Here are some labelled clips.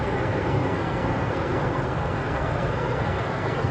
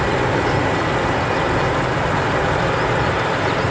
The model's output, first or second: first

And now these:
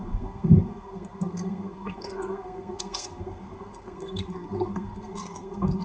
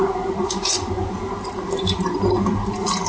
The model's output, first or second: first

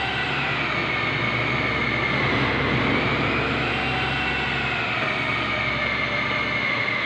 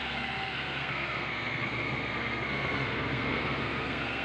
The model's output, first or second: second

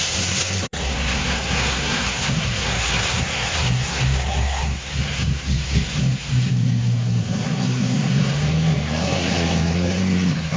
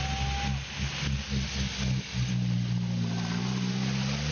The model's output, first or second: first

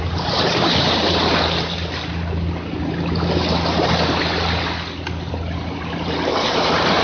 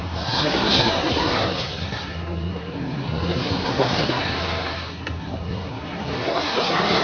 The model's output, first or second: second